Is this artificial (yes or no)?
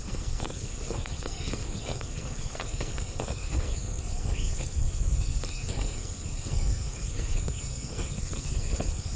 yes